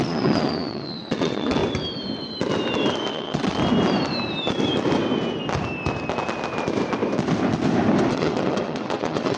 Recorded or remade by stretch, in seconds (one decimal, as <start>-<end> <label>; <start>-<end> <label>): 0.0-1.6 remade; 1.6-3.1 recorded; 3.1-3.6 remade; 3.6-8.1 recorded; 8.1-9.4 remade